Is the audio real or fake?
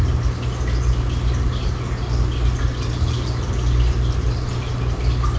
real